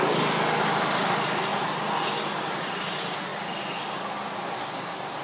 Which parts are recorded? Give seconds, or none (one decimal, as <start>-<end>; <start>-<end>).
1.5-2.6; 3.3-5.2